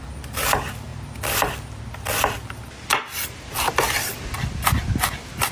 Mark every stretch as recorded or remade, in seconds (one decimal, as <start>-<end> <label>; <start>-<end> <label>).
0.0-5.5 recorded